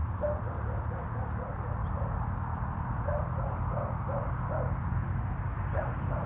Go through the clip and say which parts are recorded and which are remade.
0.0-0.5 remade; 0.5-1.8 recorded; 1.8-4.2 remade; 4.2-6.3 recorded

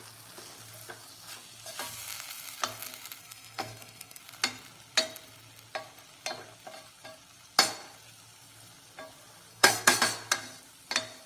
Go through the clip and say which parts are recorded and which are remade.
0.0-3.2 recorded; 3.2-4.2 remade; 4.2-9.5 recorded; 9.5-10.0 remade; 10.0-11.3 recorded

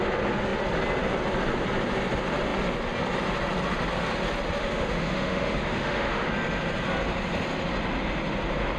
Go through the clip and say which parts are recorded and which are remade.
0.0-4.6 recorded; 4.6-6.3 remade; 6.3-8.8 recorded

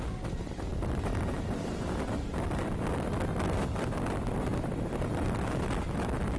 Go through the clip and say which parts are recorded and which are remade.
0.0-6.4 recorded

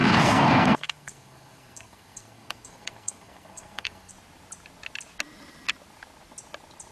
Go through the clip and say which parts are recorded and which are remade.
0.0-4.1 remade; 4.1-6.9 recorded

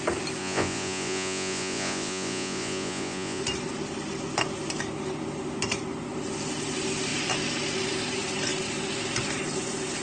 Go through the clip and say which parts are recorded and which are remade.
0.0-0.4 recorded; 0.4-3.4 remade; 3.4-10.0 recorded

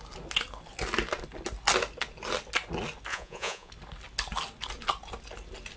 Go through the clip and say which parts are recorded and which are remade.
0.0-3.1 recorded; 3.1-3.7 remade; 3.7-5.8 recorded

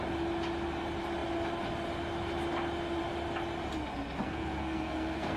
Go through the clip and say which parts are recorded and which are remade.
0.0-4.2 recorded; 4.2-5.4 remade